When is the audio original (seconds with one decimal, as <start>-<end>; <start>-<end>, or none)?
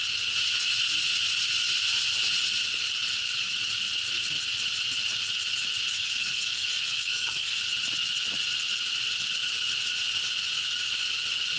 0.0-5.9; 7.6-11.6